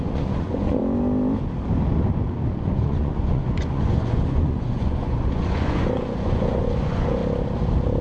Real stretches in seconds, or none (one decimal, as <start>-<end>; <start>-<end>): 0.8-2.6; 7.2-8.0